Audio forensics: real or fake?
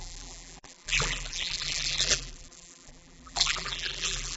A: fake